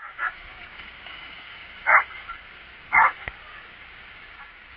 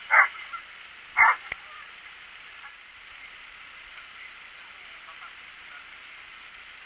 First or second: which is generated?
first